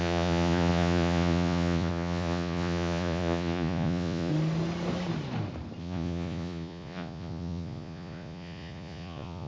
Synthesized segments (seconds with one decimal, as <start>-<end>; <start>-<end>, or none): 0.0-4.3; 5.8-9.5